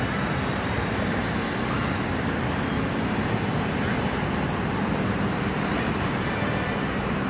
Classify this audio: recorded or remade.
recorded